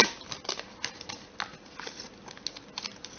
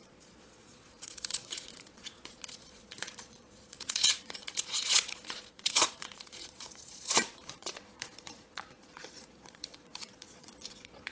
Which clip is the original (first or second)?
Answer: first